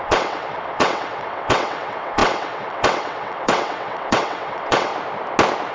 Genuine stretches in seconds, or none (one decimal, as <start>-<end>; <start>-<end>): 4.9-5.7